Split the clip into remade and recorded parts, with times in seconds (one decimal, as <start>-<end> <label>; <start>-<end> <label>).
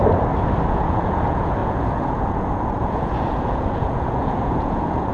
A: 0.0-0.7 recorded; 0.7-5.1 remade